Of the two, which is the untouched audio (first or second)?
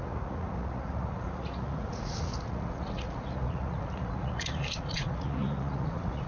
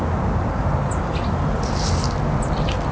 second